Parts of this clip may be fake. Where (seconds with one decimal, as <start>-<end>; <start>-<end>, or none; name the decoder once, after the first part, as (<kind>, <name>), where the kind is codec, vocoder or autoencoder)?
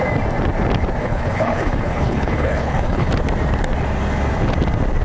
1.0-3.1 (codec, HILCodec)